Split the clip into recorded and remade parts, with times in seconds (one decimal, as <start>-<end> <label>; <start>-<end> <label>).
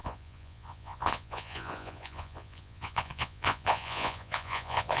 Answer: 0.0-5.0 remade